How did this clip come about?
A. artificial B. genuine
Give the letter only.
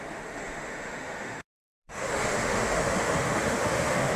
A